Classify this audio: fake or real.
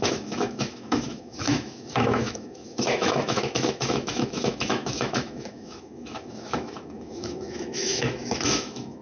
fake